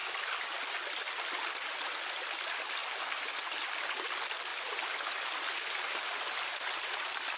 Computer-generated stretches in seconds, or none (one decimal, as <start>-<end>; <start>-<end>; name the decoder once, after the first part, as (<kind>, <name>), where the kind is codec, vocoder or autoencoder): none

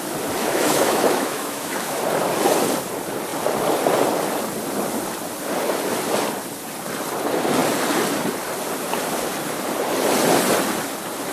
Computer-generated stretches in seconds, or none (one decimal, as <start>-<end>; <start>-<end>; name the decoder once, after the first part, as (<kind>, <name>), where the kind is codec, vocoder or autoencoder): 0.4-2.0 (autoencoder, DAC-VAE)

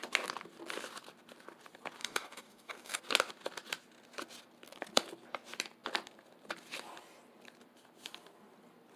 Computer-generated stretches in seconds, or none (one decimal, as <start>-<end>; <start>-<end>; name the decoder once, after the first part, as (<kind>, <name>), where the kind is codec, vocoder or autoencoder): 2.0-3.0 (codec, DAC)

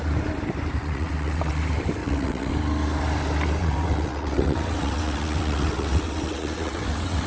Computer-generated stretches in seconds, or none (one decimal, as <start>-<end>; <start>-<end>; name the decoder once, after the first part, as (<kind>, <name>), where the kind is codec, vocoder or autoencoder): 0.8-1.6 (vocoder, WaveNeXt); 2.0-2.5; 3.6-7.3